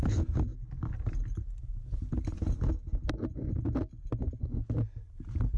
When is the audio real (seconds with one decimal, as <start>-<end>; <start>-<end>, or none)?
0.0-5.6